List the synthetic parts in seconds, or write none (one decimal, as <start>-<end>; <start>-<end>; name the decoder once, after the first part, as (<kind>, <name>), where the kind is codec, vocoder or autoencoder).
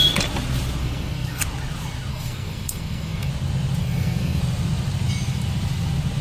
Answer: 0.8-1.4 (codec, SNAC); 2.1-3.3; 3.8-4.4